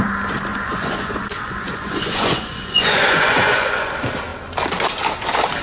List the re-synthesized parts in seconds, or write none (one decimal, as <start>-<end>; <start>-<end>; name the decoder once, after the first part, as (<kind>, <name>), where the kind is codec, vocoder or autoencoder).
0.5-3.9 (vocoder, Vocos)